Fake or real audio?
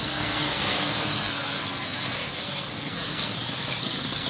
fake